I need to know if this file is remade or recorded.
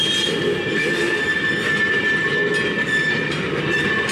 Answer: recorded